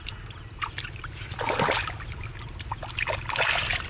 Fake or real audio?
real